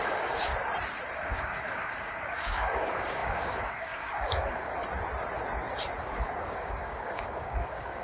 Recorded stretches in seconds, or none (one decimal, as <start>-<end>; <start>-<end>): 0.5-1.2; 4.7-6.0